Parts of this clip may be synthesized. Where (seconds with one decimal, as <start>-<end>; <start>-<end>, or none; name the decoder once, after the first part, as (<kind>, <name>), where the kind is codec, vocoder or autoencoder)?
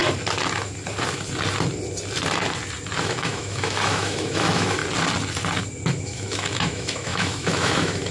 3.0-4.8 (autoencoder, DAC-VAE); 5.9-8.1